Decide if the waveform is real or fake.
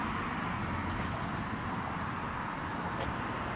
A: real